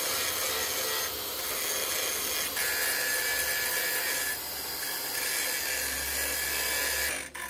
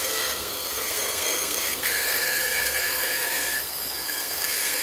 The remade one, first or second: second